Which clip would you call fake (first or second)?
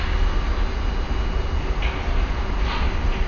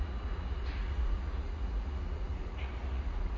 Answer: second